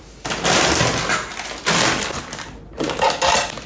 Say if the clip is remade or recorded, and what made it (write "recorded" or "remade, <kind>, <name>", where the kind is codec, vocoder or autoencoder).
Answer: recorded